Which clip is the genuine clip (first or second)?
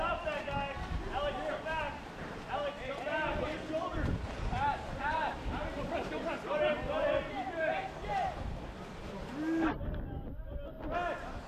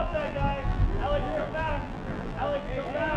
first